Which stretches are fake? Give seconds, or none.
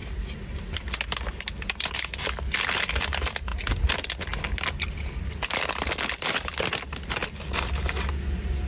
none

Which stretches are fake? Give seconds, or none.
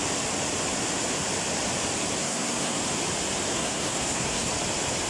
2.2-2.8 (codec, SNAC); 3.5-4.5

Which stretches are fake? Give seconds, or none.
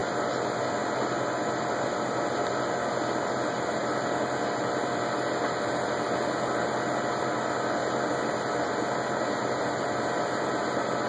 none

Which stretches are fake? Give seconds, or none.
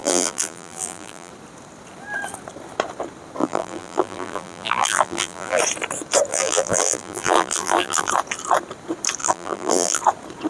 0.0-1.3 (vocoder, BigVGAN v2); 3.4-5.6; 6.3-8.1; 9.2-10.0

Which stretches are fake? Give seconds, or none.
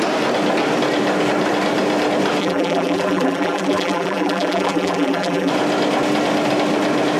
2.4-5.5 (vocoder, BigVGAN v2)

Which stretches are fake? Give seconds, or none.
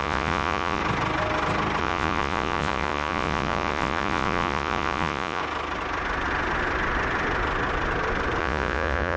0.0-0.8 (vocoder, Vocos); 1.8-5.4; 8.4-9.2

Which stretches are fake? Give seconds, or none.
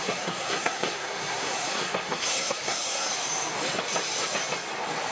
0.0-3.1 (codec, SNAC)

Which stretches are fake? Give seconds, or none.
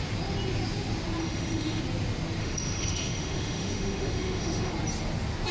1.2-1.8 (autoencoder, DAC-VAE); 2.4-4.7